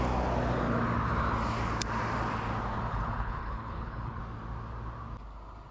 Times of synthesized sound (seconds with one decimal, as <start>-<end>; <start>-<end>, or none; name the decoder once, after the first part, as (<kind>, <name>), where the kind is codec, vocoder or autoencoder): 2.9-4.2 (codec, HILCodec)